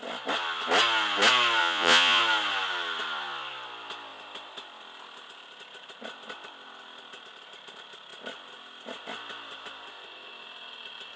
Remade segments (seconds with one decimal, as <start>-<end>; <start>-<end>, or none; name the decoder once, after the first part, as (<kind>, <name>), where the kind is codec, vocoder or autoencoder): 1.6-2.2 (vocoder, Vocos)